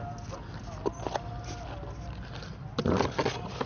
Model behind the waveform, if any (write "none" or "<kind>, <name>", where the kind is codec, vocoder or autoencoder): none